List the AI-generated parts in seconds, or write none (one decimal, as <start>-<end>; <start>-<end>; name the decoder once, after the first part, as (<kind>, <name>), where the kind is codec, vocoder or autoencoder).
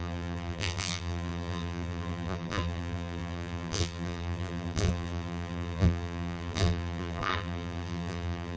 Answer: 0.0-8.6 (vocoder, BigVGAN v2)